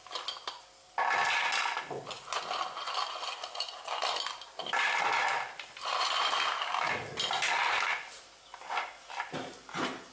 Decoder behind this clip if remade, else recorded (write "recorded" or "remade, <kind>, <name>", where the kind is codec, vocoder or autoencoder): recorded